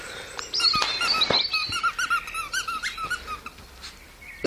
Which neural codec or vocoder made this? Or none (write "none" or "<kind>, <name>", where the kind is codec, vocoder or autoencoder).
none